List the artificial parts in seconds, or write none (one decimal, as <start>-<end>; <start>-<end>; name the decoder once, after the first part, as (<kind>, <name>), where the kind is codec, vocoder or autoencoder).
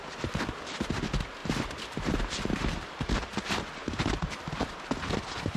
1.4-4.8 (vocoder, BigVGAN v2)